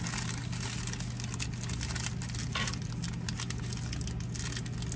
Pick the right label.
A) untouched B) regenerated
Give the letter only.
A